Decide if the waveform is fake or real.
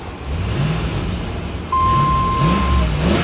real